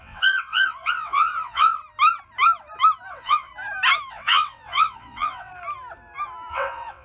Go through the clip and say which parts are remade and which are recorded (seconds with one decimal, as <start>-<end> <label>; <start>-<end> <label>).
0.0-1.8 remade; 1.8-3.1 recorded; 3.1-3.5 remade; 3.5-4.1 recorded; 4.1-5.5 remade; 5.5-6.5 recorded; 6.5-7.0 remade